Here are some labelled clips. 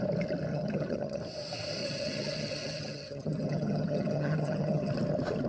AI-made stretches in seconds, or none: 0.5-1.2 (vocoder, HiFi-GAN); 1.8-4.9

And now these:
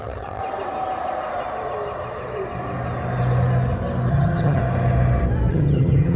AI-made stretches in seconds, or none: 0.0-0.4 (vocoder, HiFi-GAN); 4.1-4.6; 5.5-6.2